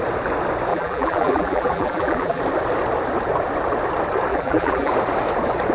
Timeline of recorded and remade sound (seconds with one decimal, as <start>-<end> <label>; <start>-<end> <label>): 0.0-0.7 recorded; 0.7-2.4 remade; 2.4-4.3 recorded; 4.3-4.9 remade; 4.9-5.7 recorded